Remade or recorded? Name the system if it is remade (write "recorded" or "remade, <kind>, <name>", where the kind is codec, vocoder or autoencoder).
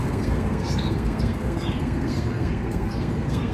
remade, codec, SNAC